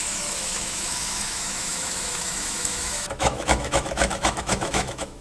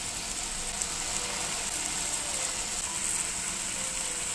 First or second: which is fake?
first